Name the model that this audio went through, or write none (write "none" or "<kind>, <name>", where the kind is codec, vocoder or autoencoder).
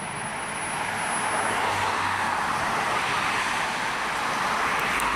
none